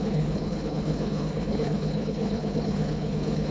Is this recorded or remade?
remade